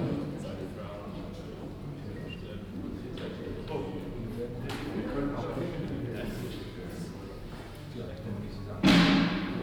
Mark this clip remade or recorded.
recorded